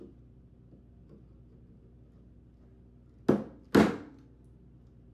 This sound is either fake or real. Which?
real